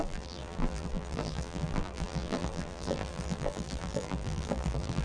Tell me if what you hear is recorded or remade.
remade